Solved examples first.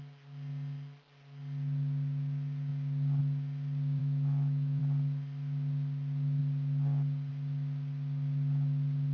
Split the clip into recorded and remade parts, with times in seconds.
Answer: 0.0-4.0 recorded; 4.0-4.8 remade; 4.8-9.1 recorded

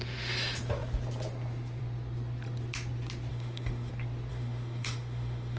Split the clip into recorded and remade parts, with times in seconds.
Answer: 0.0-3.3 recorded; 3.3-3.9 remade; 3.9-4.3 recorded; 4.3-5.6 remade

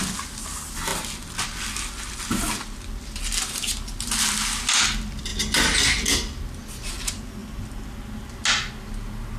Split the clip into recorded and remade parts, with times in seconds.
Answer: 0.0-9.4 recorded

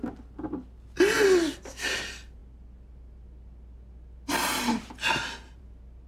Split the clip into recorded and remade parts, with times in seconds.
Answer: 0.0-6.1 recorded